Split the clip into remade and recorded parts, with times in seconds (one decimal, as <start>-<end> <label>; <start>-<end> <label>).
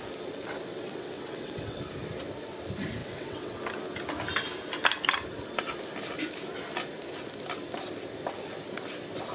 0.0-0.7 recorded; 0.7-1.8 remade; 1.8-3.0 recorded; 3.0-3.6 remade; 3.6-9.3 recorded